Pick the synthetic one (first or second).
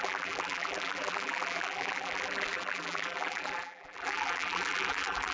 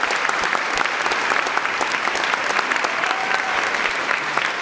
first